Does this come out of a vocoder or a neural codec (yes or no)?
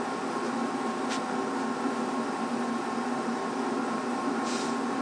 yes